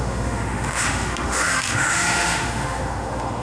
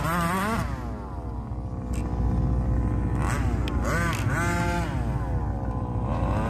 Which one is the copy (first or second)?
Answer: first